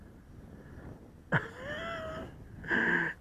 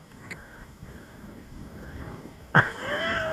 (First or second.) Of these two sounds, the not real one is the second